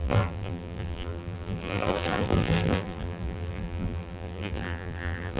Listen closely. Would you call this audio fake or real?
fake